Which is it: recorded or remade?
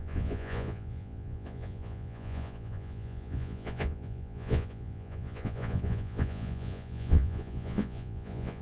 remade